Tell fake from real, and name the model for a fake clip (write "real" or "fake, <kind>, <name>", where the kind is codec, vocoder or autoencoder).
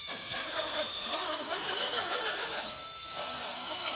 fake, codec, SNAC